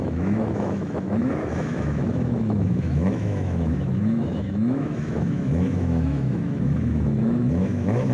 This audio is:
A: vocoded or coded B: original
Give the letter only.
A